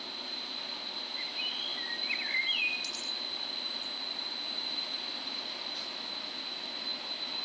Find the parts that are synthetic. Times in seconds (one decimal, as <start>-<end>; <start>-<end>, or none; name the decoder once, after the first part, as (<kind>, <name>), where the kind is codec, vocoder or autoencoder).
0.0-1.7 (vocoder, BigVGAN v2); 2.3-7.4